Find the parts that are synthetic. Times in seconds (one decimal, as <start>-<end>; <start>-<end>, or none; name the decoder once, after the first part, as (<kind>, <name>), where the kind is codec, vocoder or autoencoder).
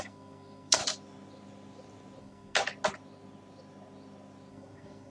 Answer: 0.0-0.8 (codec, SNAC); 2.2-2.6; 4.5-5.1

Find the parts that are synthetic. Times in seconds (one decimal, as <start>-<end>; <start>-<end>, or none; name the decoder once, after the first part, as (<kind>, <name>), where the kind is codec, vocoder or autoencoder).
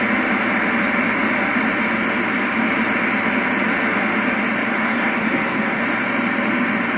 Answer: 4.7-5.8 (codec, SNAC)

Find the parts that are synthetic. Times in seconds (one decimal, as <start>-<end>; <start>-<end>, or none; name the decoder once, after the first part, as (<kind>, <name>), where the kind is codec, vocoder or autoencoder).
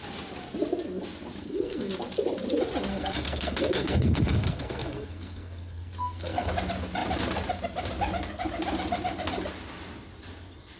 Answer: 1.4-1.9 (codec, SNAC); 2.9-6.5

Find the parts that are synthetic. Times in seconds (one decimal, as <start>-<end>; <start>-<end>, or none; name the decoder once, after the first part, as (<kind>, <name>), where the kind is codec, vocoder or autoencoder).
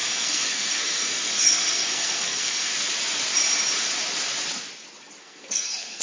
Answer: 0.0-2.7 (codec, SNAC); 5.2-6.0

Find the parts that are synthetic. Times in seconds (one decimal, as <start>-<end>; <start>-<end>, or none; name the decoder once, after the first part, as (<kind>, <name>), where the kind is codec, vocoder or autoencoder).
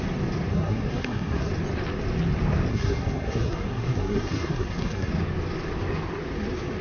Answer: 0.5-1.5 (codec, SNAC); 2.7-5.1